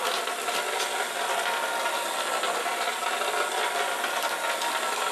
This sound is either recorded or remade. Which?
recorded